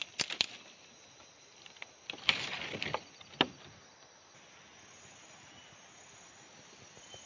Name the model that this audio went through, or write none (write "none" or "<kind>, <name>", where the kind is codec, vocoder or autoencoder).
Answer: none